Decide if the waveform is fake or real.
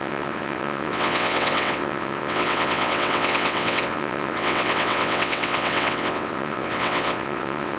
fake